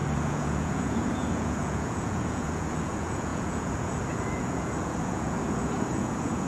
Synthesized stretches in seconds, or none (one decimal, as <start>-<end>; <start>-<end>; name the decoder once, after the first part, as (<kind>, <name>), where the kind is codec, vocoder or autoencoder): 0.0-6.5 (vocoder, Vocos)